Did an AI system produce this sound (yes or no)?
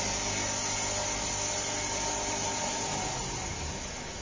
no